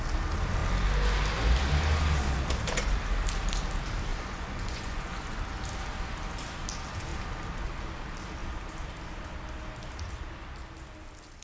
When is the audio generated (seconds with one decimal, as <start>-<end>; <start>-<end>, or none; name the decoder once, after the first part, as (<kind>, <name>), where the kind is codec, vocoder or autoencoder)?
4.1-5.3 (vocoder, Vocos)